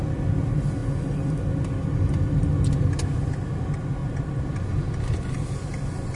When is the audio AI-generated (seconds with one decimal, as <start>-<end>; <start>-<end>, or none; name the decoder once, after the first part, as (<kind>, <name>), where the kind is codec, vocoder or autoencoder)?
none